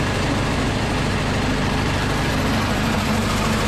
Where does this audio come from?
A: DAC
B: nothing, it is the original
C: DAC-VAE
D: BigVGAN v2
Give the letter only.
D